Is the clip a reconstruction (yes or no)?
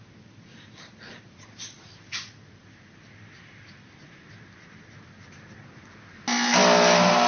no